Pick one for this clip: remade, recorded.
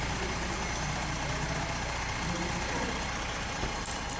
recorded